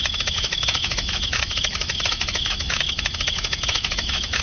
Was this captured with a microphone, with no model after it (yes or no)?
no